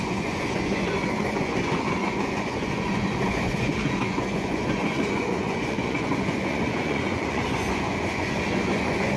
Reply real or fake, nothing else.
fake